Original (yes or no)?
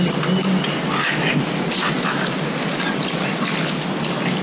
yes